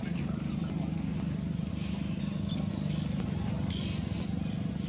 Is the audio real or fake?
real